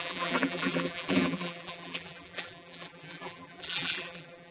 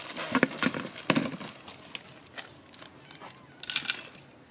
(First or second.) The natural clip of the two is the second